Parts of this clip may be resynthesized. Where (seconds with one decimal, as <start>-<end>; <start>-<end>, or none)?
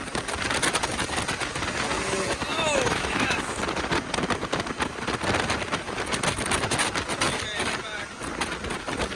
2.5-3.6